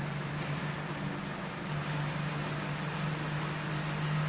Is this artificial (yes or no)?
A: no